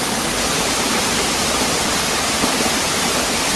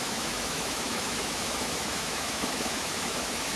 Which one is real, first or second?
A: first